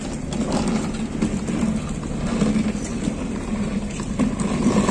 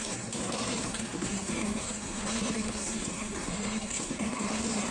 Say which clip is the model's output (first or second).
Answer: second